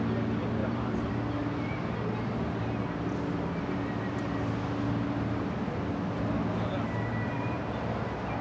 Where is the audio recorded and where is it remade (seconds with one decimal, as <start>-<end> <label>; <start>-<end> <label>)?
0.0-0.6 recorded; 0.6-1.1 remade; 1.1-7.1 recorded; 7.1-7.6 remade; 7.6-8.4 recorded